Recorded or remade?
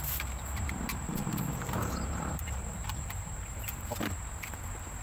remade